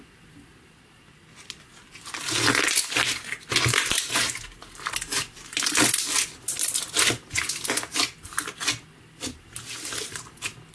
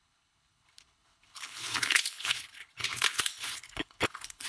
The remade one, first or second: second